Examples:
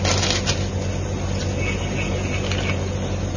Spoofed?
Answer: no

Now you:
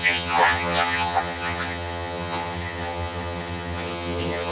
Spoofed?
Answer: yes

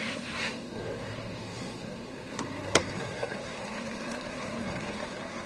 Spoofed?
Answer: yes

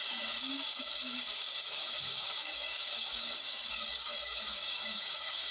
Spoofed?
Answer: yes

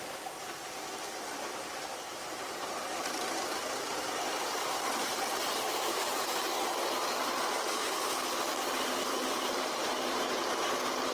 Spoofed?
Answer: yes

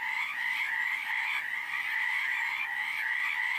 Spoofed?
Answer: no